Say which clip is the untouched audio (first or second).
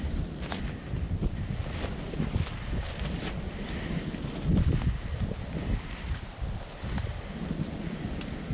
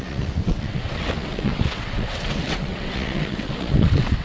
first